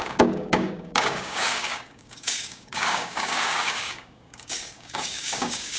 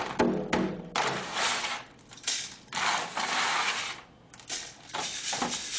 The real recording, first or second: second